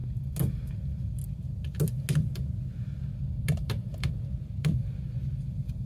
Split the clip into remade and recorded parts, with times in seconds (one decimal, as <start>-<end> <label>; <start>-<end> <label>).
0.0-5.9 recorded